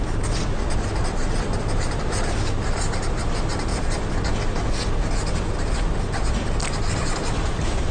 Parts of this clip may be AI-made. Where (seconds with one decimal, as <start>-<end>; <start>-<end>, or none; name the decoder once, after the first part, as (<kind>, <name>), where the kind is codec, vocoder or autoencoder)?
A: none